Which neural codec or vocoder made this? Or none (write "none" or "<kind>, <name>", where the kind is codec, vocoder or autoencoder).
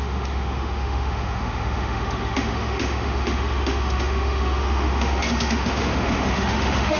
autoencoder, DAC-VAE